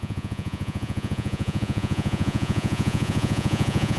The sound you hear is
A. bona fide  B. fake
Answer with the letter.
B